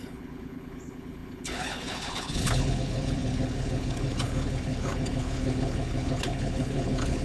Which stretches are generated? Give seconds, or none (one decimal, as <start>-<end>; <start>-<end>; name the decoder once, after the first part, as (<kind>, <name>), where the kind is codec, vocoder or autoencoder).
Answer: 0.0-7.2 (codec, HILCodec)